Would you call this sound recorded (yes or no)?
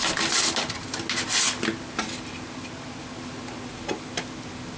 yes